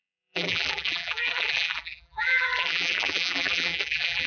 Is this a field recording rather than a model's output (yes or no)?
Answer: no